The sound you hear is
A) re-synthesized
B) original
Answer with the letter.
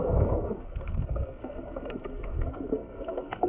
A